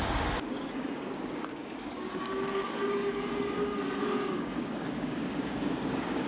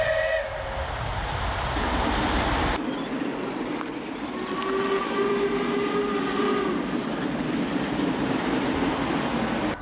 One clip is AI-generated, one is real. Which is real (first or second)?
second